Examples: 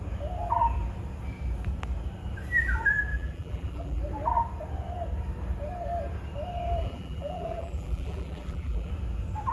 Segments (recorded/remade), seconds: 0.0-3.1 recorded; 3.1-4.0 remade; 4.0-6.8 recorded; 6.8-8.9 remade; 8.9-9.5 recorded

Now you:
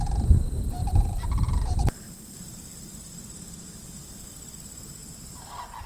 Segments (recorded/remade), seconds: 0.0-0.8 recorded; 0.8-4.3 remade; 4.3-5.0 recorded; 5.0-5.5 remade; 5.5-5.9 recorded

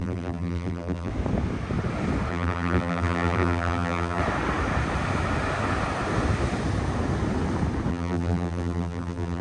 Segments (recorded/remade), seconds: 0.0-1.1 remade; 1.1-2.3 recorded; 2.3-4.2 remade; 4.2-7.9 recorded; 7.9-9.4 remade

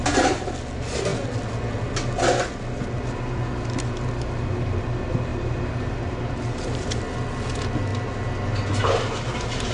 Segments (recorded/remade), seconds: 0.0-5.3 recorded; 5.3-7.0 remade; 7.0-9.7 recorded